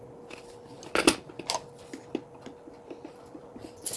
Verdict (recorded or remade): recorded